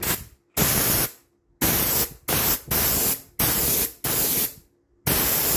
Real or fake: real